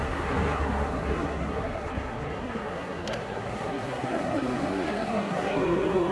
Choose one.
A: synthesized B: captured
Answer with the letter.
A